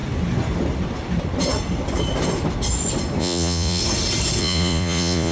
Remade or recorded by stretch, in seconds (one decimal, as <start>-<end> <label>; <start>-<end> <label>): 0.0-3.2 recorded; 3.2-3.8 remade; 3.8-4.4 recorded; 4.4-5.3 remade